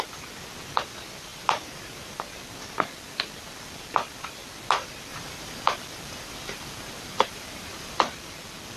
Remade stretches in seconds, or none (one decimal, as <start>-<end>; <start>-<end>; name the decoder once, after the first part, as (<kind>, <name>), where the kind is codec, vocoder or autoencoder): 1.3-2.2 (vocoder, BigVGAN v2); 5.1-8.0